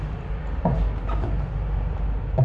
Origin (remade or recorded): recorded